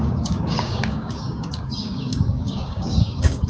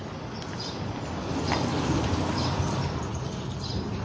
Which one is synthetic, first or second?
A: first